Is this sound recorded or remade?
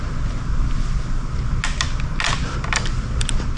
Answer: recorded